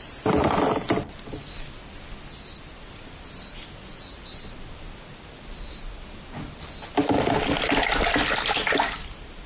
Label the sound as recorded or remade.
recorded